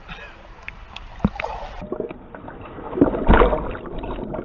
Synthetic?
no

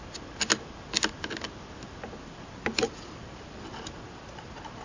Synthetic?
no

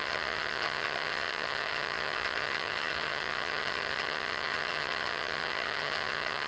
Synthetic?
yes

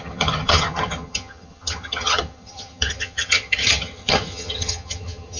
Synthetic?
yes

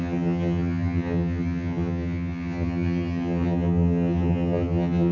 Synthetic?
yes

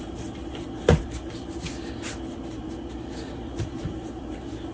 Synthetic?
no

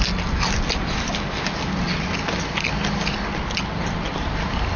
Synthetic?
no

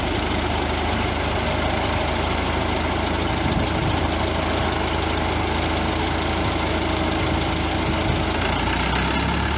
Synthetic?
no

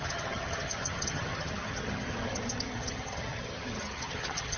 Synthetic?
yes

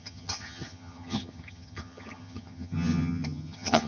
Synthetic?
yes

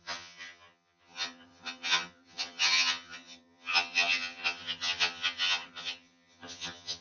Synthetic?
yes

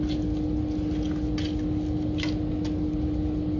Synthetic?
no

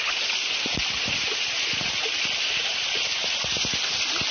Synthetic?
no